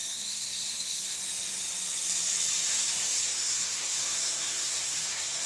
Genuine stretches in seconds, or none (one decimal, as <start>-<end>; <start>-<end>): 1.2-2.7

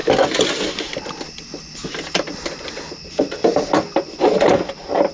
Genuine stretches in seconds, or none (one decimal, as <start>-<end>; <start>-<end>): 0.0-5.1